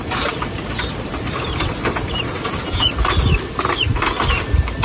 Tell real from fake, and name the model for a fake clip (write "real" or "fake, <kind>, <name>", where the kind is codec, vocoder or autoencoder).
fake, vocoder, BigVGAN v2